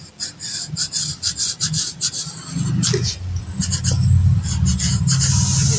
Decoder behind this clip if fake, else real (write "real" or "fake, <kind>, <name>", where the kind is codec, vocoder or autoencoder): real